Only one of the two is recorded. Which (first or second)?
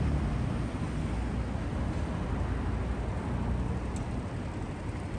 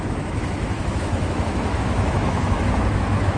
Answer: first